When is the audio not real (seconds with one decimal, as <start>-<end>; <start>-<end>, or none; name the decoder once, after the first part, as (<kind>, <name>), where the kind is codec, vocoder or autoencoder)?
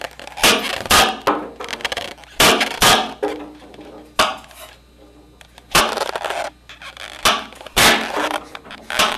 8.5-9.2 (vocoder, BigVGAN v2)